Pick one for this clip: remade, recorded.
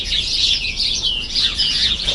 remade